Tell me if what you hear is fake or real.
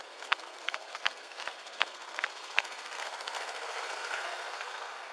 fake